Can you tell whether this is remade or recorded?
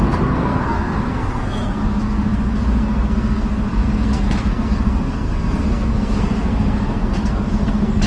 remade